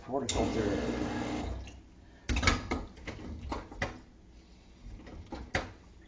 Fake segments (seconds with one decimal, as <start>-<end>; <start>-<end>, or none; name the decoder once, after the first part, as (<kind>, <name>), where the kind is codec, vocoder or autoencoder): none